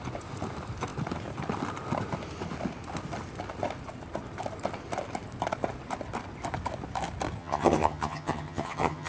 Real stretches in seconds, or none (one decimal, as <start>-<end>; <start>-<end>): 0.0-7.4